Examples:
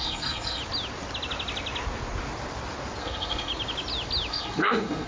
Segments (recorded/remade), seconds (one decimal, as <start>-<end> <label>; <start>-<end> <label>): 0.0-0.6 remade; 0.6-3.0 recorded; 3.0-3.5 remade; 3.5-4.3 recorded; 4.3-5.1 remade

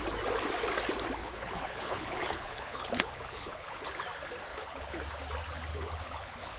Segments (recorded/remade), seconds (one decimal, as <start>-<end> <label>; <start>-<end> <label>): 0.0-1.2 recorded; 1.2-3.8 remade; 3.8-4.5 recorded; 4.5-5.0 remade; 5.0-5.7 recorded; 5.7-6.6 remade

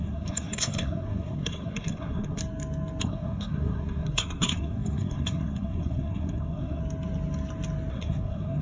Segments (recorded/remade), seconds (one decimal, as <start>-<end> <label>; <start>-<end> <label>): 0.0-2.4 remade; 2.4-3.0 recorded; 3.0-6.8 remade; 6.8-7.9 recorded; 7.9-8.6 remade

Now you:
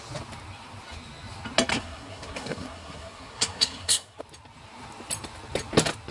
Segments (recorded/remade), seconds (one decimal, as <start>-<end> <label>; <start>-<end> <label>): 0.0-1.7 recorded; 1.7-4.2 remade; 4.2-6.1 recorded